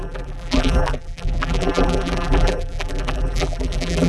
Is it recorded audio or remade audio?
remade